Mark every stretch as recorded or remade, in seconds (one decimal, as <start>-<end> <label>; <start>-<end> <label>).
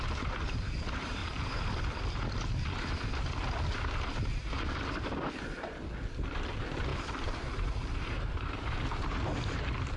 0.0-1.2 remade; 1.2-6.3 recorded; 6.3-10.0 remade